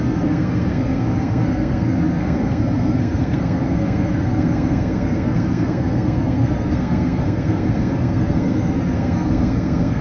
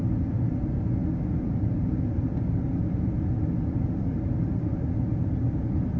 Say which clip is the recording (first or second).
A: second